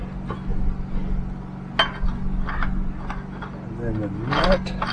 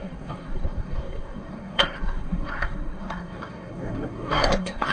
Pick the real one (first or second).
first